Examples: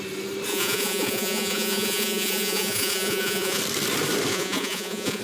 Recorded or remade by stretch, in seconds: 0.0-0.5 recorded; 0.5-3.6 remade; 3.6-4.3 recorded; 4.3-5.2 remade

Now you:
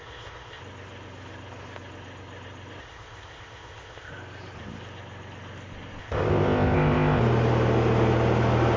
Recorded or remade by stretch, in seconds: 0.0-0.6 remade; 0.6-2.8 recorded; 2.8-4.1 remade; 4.1-6.0 recorded; 6.0-7.2 remade; 7.2-8.8 recorded

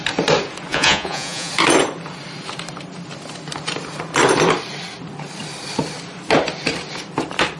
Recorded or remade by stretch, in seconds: 0.0-0.7 recorded; 0.7-1.5 remade; 1.5-7.6 recorded

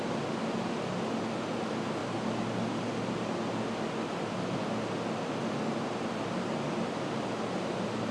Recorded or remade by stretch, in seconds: 0.0-8.1 recorded

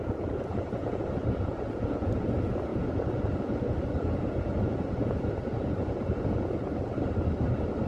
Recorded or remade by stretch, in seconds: 0.0-6.7 remade; 6.7-7.9 recorded